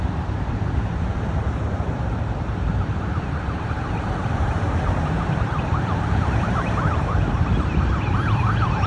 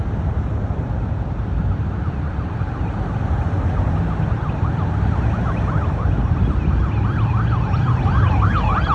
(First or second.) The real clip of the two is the second